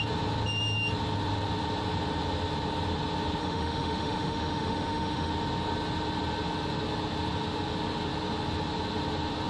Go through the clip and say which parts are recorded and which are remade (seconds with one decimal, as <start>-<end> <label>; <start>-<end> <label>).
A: 0.0-3.4 recorded; 3.4-5.3 remade; 5.3-9.5 recorded